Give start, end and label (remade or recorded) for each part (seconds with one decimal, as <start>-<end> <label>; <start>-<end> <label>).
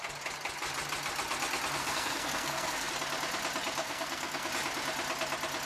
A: 0.0-1.8 recorded; 1.8-2.9 remade; 2.9-3.8 recorded; 3.8-4.5 remade; 4.5-5.7 recorded